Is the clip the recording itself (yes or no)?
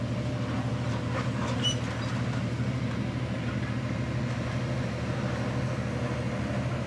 yes